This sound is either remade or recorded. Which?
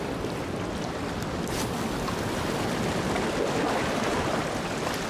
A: recorded